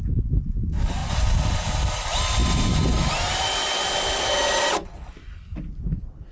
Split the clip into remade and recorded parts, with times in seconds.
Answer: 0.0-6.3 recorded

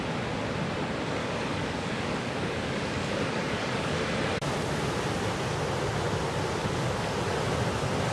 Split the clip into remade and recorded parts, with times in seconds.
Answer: 0.0-1.2 recorded; 1.2-4.0 remade; 4.0-6.6 recorded; 6.6-7.2 remade; 7.2-8.1 recorded